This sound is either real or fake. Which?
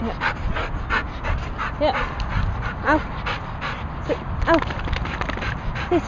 real